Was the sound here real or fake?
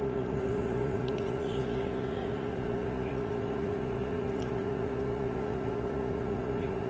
fake